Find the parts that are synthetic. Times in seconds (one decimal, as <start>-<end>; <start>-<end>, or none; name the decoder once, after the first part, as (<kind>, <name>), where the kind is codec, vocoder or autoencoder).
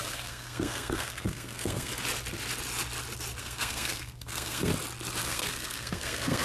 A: 0.0-1.9 (codec, SNAC); 3.4-4.7; 5.2-6.4